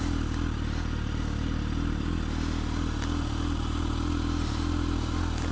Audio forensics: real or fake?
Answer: real